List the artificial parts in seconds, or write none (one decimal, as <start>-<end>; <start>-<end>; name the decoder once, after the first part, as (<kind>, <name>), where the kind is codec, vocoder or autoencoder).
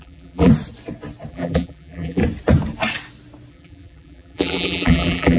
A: 0.0-0.5 (vocoder, BigVGAN v2); 1.3-2.2; 3.5-5.4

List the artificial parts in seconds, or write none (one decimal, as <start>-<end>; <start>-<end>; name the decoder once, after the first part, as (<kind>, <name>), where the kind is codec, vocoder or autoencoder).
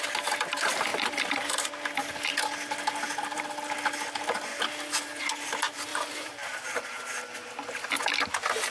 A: 0.9-1.7 (vocoder, BigVGAN v2); 5.9-7.0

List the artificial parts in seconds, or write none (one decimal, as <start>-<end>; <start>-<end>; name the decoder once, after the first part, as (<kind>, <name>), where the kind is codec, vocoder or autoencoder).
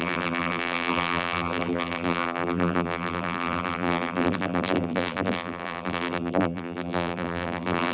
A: 0.0-7.9 (vocoder, BigVGAN v2)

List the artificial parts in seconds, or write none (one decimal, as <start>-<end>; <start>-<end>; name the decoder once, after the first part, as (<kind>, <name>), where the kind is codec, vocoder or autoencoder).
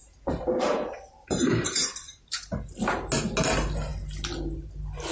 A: 0.0-2.6 (vocoder, BigVGAN v2)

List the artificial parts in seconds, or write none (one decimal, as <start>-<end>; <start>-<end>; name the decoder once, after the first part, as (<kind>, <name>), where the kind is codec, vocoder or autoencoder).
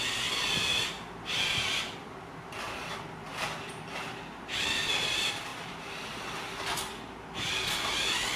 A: 3.3-4.0 (vocoder, BigVGAN v2); 5.5-6.1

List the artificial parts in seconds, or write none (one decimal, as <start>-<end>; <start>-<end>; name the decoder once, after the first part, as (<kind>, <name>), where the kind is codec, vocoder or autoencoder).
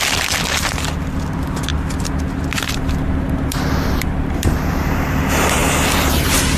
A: 0.0-1.7 (vocoder, BigVGAN v2); 3.7-5.6; 6.1-6.6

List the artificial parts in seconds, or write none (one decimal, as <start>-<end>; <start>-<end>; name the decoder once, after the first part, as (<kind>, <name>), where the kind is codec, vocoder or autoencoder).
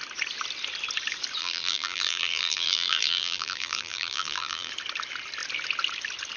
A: 1.4-4.7 (vocoder, BigVGAN v2)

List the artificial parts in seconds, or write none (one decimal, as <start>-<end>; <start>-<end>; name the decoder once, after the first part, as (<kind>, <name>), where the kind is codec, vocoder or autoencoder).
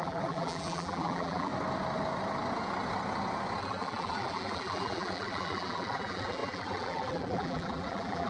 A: 0.0-1.5 (vocoder, BigVGAN v2); 3.6-8.3